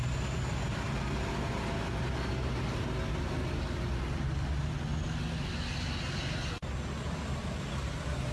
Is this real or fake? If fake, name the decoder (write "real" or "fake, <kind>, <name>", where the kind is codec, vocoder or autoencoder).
real